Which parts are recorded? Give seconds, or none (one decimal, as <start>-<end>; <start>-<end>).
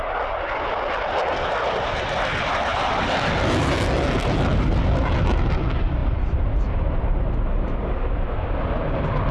0.0-9.3